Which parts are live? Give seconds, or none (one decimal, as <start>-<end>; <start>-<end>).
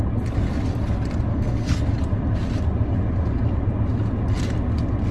0.0-1.3; 1.8-5.1